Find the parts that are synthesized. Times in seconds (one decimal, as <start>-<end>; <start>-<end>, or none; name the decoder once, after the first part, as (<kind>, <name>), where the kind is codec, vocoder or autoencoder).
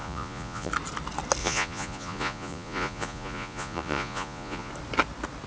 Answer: 0.0-0.7 (vocoder, Vocos); 1.4-4.7